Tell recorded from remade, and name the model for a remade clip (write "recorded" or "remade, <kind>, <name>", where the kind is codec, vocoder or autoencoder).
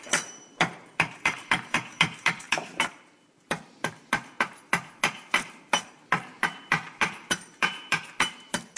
remade, vocoder, BigVGAN v2